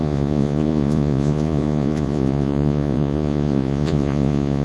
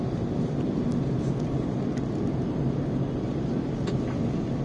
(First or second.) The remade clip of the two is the first